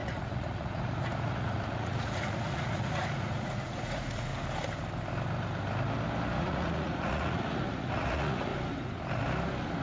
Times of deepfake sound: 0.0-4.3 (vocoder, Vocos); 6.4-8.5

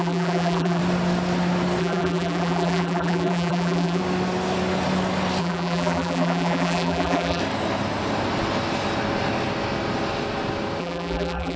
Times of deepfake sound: 0.0-0.8 (vocoder, BigVGAN v2); 1.8-4.0; 5.4-7.4; 10.8-11.6

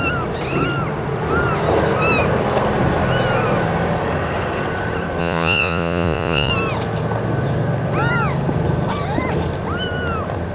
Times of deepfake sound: 5.2-6.5 (vocoder, Vocos)

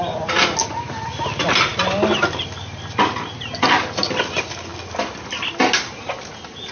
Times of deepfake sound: none